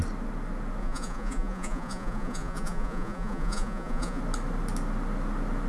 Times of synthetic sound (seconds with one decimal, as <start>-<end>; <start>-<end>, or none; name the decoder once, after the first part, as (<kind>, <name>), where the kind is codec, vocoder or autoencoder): 0.8-4.2 (vocoder, Vocos)